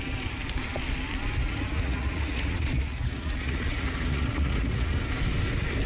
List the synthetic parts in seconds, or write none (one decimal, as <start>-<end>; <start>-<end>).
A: 1.4-4.9